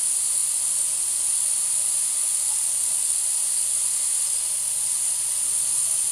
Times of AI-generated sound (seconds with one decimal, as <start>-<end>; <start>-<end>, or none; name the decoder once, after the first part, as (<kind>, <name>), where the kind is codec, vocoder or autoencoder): none